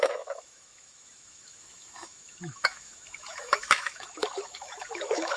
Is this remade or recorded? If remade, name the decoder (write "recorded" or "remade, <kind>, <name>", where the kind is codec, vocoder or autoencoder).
remade, autoencoder, DAC-VAE